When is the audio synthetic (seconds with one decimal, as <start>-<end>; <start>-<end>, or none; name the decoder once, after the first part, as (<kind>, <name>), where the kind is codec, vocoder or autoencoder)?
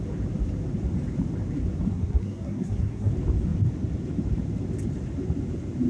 1.9-3.1 (codec, SNAC)